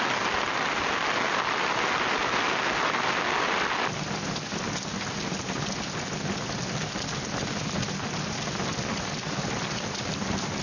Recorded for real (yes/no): yes